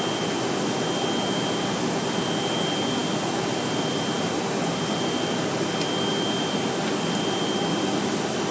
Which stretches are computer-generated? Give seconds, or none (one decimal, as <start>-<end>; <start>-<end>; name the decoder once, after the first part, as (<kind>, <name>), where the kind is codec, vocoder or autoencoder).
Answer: none